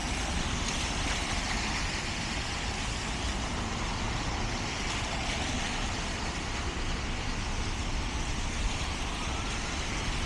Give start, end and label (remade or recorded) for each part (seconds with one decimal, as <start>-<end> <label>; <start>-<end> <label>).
0.0-10.3 recorded